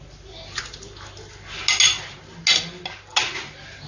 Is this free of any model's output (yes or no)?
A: yes